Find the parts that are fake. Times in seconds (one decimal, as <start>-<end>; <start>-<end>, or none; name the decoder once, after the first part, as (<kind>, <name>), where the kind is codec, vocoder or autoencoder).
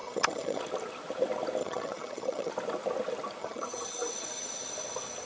0.0-0.6 (vocoder, HiFi-GAN); 1.6-2.5; 3.4-4.1